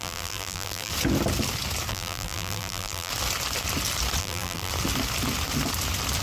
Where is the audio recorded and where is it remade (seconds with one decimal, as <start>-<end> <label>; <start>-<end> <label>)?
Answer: 0.0-0.9 remade; 0.9-1.9 recorded; 1.9-3.1 remade; 3.1-4.2 recorded; 4.2-4.7 remade; 4.7-6.2 recorded